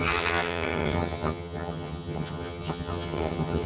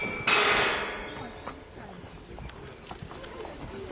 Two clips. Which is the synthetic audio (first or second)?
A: first